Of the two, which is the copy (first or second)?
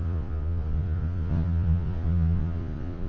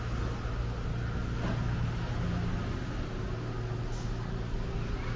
first